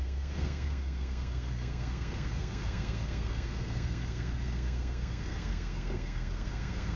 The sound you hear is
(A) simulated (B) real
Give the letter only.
A